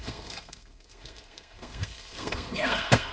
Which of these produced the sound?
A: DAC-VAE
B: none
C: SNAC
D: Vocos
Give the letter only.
C